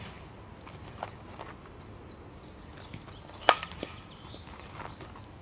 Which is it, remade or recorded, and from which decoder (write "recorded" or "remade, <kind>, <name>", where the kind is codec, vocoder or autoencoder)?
recorded